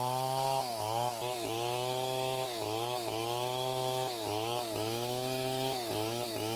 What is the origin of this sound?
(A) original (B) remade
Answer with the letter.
B